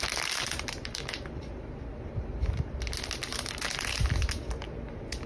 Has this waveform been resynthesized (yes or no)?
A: no